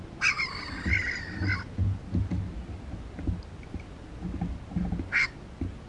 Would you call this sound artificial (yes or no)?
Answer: no